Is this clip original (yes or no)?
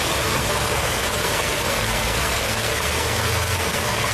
no